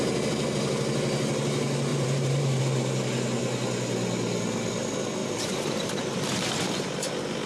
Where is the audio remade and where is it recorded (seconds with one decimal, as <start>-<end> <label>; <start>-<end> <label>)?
0.0-1.9 recorded; 1.9-2.6 remade; 2.6-5.2 recorded; 5.2-6.9 remade; 6.9-7.5 recorded